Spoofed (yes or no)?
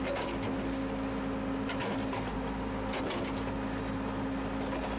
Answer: no